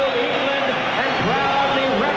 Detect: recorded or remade recorded